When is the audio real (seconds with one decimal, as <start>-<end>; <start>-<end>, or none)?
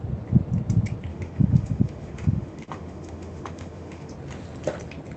0.0-1.1; 4.1-5.2